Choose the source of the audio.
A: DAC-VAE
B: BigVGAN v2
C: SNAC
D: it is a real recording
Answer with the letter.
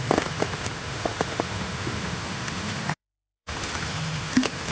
A